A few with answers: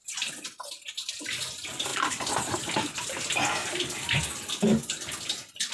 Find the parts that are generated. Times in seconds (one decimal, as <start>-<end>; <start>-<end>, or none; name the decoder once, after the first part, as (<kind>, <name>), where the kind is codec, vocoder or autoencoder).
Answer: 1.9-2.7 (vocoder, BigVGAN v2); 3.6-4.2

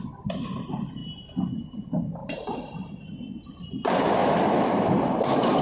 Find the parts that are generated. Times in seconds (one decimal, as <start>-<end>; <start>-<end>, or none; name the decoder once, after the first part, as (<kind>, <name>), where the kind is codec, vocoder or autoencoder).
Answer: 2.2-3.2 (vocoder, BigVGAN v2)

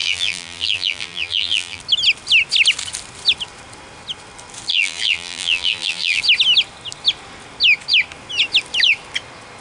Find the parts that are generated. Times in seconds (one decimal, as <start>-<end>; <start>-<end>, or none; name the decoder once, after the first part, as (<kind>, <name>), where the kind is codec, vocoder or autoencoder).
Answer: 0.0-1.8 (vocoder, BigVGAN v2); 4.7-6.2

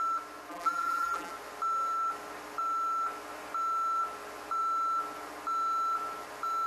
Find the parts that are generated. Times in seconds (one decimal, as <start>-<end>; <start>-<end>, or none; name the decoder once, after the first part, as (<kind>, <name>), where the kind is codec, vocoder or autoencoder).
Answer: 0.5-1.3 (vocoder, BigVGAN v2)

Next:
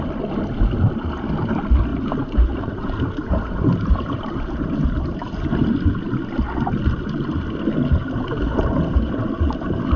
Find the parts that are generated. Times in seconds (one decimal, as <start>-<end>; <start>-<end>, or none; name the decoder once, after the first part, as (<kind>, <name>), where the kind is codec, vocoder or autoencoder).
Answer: 1.9-5.5 (vocoder, BigVGAN v2)

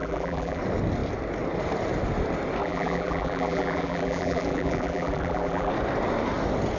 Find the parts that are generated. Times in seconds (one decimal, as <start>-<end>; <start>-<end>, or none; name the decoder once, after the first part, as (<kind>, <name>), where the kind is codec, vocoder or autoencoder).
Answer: 0.0-0.6 (vocoder, BigVGAN v2); 2.6-5.7

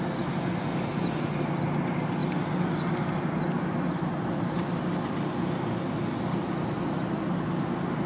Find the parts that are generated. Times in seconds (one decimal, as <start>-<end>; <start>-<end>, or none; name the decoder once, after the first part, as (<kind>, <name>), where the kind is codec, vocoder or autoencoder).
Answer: none